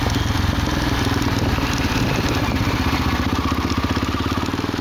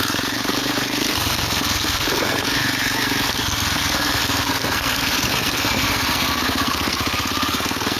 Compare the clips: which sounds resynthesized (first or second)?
second